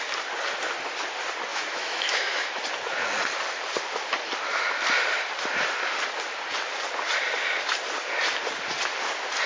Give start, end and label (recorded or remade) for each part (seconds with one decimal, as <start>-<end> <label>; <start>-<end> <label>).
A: 0.0-1.5 recorded; 1.5-2.6 remade; 2.6-9.5 recorded